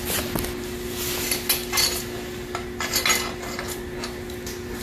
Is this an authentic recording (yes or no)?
yes